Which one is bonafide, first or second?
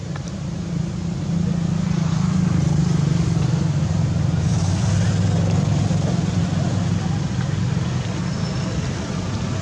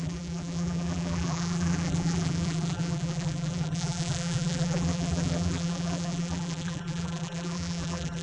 first